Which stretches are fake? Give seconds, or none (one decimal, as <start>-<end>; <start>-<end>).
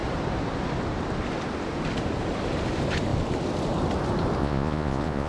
4.4-5.3